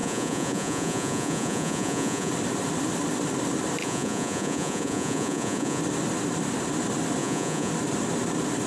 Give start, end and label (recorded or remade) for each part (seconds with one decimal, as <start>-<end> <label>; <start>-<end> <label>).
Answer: 0.0-2.3 remade; 2.3-3.8 recorded; 3.8-5.8 remade; 5.8-7.2 recorded; 7.2-7.7 remade; 7.7-8.7 recorded